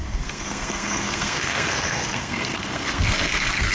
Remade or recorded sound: remade